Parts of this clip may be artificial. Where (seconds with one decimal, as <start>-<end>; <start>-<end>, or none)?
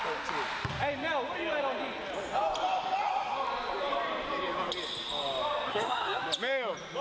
5.7-6.2